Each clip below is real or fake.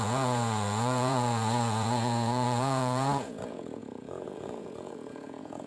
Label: fake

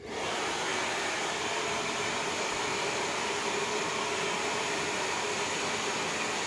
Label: fake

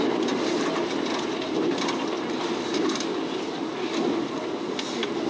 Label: real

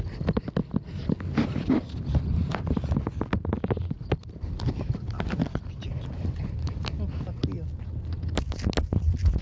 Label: real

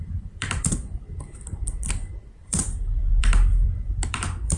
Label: fake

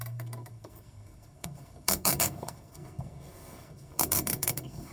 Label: fake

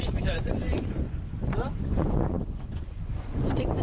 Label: fake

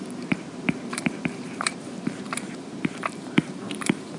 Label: fake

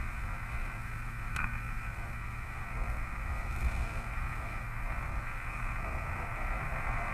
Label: fake